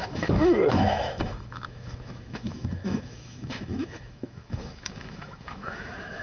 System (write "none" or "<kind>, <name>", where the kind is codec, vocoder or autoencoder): autoencoder, DAC-VAE